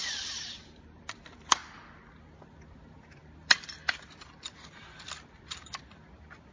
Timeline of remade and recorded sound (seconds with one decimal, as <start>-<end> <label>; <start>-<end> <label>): 0.0-1.6 remade; 1.6-2.3 recorded; 2.3-6.5 remade